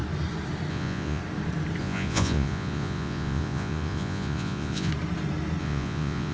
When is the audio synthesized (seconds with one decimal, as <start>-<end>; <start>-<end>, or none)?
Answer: 0.7-1.2; 1.8-4.9; 5.6-6.3